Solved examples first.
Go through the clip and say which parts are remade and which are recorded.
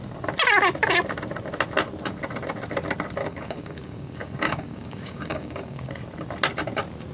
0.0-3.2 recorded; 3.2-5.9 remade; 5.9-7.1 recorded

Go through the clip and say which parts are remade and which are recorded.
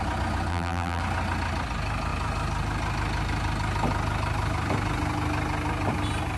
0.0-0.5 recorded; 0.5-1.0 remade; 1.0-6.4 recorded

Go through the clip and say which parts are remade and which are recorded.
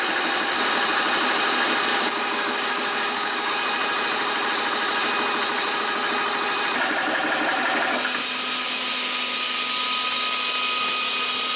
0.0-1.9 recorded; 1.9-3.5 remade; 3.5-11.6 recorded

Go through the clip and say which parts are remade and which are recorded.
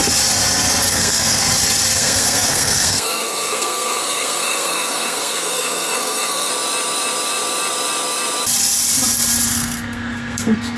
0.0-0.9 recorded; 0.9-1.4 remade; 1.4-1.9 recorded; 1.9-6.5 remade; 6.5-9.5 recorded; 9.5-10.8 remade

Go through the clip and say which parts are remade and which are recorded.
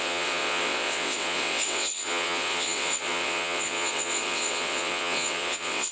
0.0-5.9 remade